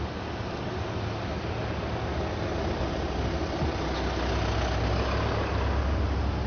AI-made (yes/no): no